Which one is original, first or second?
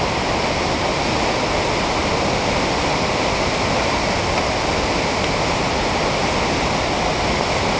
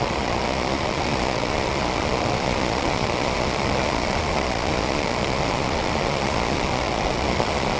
first